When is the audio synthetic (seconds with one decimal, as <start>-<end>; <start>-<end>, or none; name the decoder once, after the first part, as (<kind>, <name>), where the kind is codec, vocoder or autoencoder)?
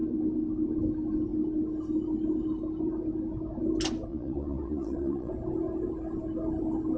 4.1-5.3 (vocoder, Vocos)